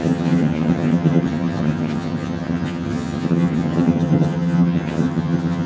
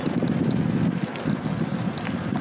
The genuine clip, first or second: second